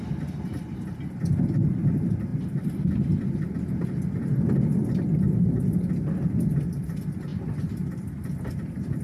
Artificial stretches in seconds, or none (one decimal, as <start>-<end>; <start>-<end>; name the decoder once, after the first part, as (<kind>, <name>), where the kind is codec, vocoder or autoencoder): none